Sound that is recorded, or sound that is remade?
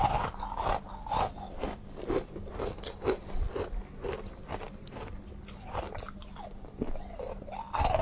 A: recorded